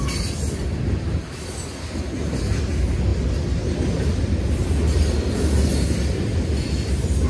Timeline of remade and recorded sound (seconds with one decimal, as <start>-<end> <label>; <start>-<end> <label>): 0.0-7.3 recorded